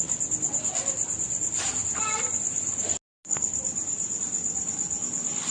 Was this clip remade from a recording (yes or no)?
no